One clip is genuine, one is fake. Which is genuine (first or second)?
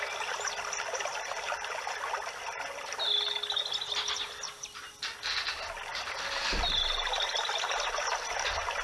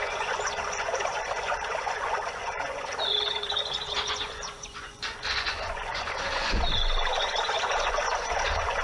first